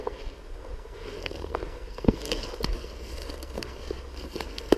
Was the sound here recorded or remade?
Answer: remade